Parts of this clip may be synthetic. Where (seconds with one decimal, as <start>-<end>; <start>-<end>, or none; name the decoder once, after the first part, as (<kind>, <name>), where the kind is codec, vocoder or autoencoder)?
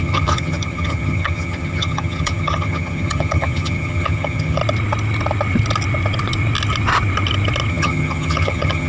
0.0-4.6 (vocoder, HiFi-GAN); 7.7-8.9